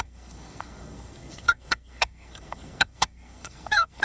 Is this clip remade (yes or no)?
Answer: yes